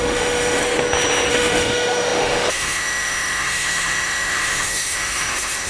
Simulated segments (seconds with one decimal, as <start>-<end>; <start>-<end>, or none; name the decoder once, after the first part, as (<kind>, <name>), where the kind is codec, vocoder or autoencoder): 0.0-0.6 (autoencoder, DAC-VAE); 1.3-5.7